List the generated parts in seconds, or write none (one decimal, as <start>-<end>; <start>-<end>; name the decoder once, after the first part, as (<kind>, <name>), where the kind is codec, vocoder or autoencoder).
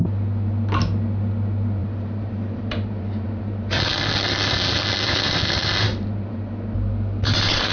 1.8-6.4 (vocoder, BigVGAN v2)